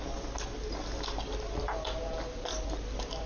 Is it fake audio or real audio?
real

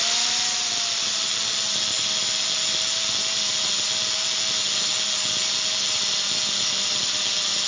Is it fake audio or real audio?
real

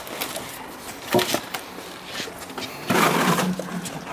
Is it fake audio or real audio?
real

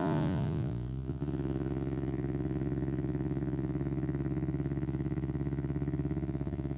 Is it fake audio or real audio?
fake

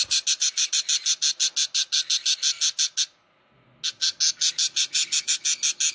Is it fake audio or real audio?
real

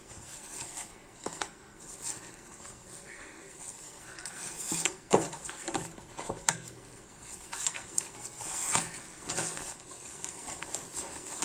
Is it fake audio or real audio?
fake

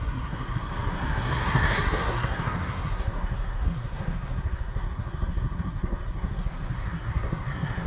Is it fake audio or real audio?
fake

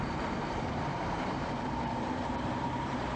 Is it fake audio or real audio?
fake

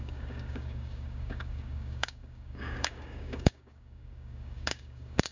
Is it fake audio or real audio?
fake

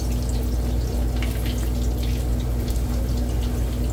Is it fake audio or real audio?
real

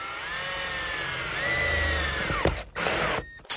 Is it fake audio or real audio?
real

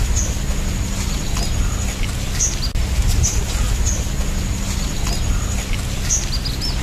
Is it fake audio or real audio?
real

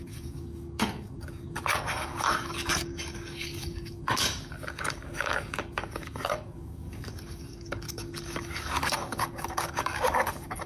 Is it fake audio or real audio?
fake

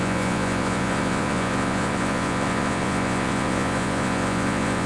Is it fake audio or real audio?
fake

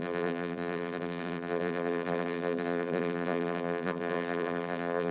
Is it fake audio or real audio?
fake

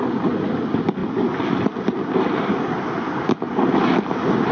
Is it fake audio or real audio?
real